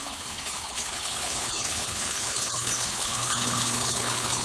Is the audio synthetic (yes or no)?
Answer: yes